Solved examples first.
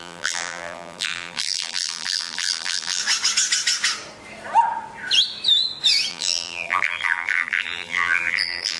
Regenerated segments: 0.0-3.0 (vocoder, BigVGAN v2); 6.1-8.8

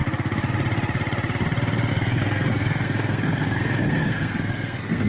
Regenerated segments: 1.9-5.1 (codec, SNAC)

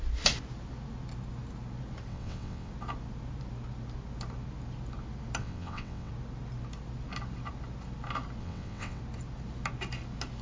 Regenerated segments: 2.1-2.7 (vocoder, WaveNeXt); 5.4-6.1; 8.4-9.0

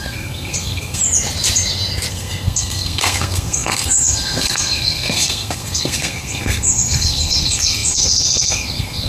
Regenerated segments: 0.0-1.0 (codec, SNAC); 2.1-9.1